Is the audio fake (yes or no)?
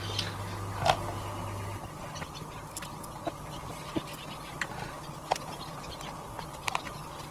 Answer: no